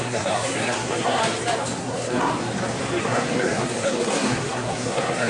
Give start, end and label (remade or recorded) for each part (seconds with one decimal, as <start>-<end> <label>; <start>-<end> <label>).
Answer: 0.0-1.2 remade; 1.2-1.8 recorded; 1.8-2.3 remade; 2.3-3.0 recorded; 3.0-5.3 remade